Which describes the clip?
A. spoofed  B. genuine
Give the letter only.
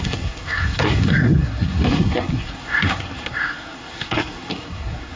A